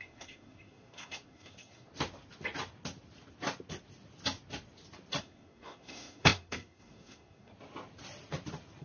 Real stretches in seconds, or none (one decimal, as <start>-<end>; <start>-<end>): 1.9-5.2; 7.5-8.8